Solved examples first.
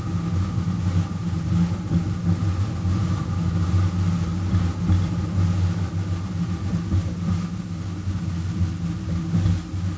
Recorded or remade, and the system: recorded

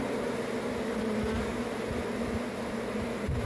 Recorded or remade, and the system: recorded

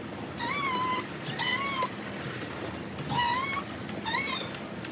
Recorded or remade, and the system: recorded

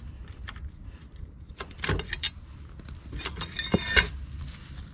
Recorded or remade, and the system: recorded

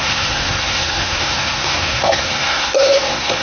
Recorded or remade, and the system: remade, codec, SNAC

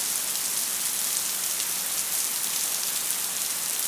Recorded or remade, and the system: recorded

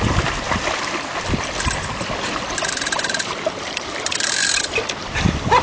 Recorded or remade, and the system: recorded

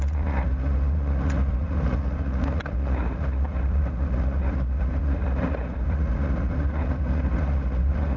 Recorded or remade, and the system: remade, vocoder, Vocos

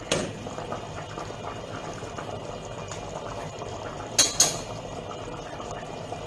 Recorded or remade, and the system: recorded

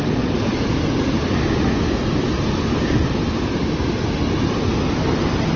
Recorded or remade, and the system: recorded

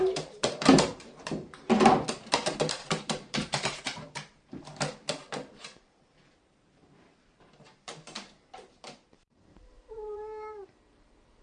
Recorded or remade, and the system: remade, vocoder, BigVGAN v2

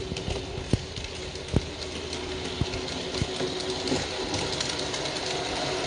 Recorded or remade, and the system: recorded